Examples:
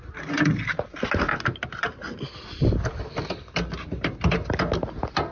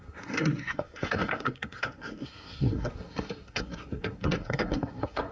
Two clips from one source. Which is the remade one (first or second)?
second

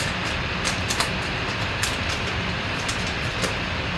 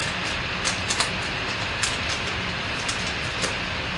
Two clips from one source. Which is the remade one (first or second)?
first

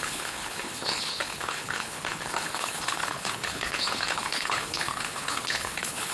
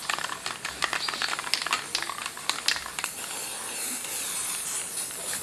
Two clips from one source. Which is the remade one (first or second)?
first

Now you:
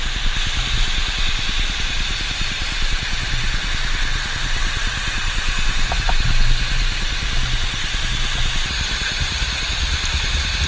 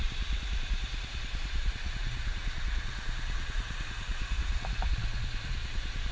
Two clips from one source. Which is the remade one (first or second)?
second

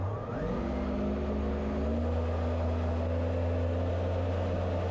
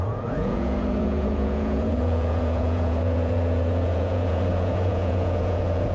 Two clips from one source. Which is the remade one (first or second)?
second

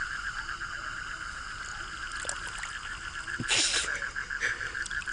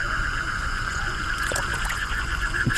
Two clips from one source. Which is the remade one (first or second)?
second